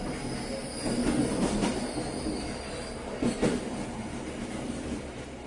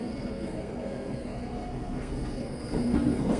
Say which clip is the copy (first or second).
second